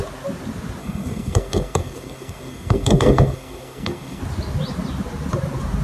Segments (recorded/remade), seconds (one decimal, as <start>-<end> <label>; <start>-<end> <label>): 0.0-0.8 recorded; 0.8-4.2 remade; 4.2-5.8 recorded